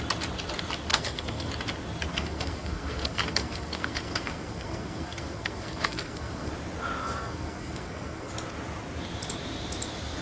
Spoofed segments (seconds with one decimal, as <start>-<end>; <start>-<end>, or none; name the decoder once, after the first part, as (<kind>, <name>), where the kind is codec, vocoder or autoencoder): 0.9-1.5 (codec, SNAC); 2.1-6.5; 7.0-8.3